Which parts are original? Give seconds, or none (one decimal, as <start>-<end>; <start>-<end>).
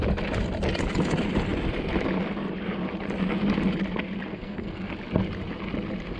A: 0.0-4.3; 4.9-6.2